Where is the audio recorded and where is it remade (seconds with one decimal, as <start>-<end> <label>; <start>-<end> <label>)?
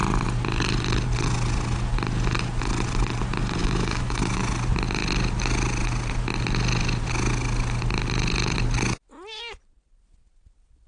0.0-3.6 recorded; 3.6-4.4 remade; 4.4-10.9 recorded